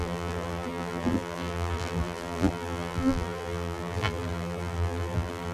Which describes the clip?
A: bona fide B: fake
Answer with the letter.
B